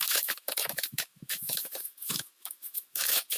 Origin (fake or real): fake